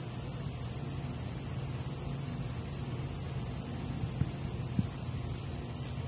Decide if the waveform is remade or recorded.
recorded